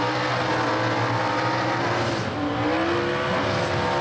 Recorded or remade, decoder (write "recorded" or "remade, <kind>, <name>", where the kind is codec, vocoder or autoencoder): recorded